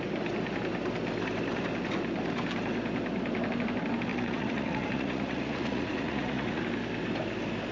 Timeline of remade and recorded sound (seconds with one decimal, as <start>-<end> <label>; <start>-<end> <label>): 0.0-4.1 recorded; 4.1-6.6 remade; 6.6-7.7 recorded